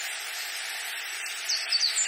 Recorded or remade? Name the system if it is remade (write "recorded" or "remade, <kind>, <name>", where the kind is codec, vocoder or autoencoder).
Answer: remade, vocoder, BigVGAN v2